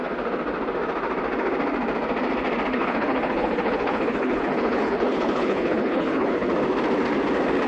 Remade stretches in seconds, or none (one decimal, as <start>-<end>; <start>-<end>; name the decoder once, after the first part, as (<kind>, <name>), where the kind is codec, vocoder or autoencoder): 2.7-6.5 (codec, HILCodec)